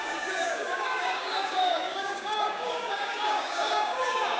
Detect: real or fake fake